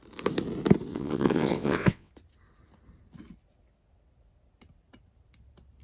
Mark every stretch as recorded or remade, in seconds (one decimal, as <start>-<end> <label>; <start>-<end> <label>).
0.0-0.9 recorded; 0.9-2.1 remade; 2.1-5.8 recorded

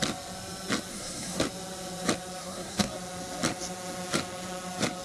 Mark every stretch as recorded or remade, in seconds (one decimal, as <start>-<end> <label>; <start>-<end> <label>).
0.0-0.9 recorded; 0.9-1.4 remade; 1.4-2.4 recorded; 2.4-2.9 remade; 2.9-5.0 recorded

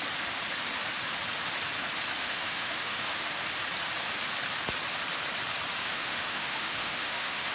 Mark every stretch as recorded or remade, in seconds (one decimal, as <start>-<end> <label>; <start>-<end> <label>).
0.0-2.2 recorded; 2.2-3.4 remade; 3.4-5.8 recorded; 5.8-7.5 remade

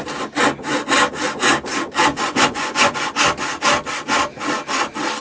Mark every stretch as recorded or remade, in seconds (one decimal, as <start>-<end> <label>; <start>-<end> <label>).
0.0-2.1 recorded; 2.1-3.1 remade; 3.1-5.2 recorded

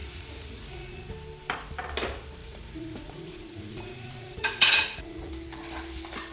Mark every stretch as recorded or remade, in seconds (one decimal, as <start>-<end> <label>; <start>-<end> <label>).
0.0-1.1 remade; 1.1-2.4 recorded; 2.4-5.3 remade; 5.3-6.3 recorded

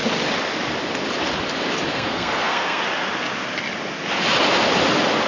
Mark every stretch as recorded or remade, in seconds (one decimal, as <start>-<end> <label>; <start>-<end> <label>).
0.0-1.9 recorded; 1.9-2.8 remade; 2.8-5.3 recorded

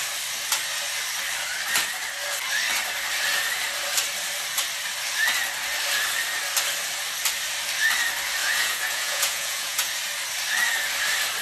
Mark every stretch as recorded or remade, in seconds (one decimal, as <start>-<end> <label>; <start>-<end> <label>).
0.0-8.4 recorded; 8.4-9.9 remade; 9.9-11.4 recorded

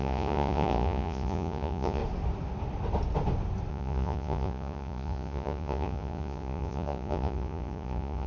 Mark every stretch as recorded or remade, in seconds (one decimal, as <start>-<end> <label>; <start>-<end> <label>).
0.0-2.0 remade; 2.0-3.7 recorded; 3.7-8.3 remade